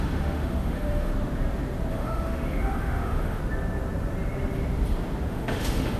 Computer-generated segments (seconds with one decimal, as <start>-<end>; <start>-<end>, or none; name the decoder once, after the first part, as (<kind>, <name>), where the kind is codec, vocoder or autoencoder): 0.0-1.1 (autoencoder, DAC-VAE); 1.9-3.4; 5.3-6.0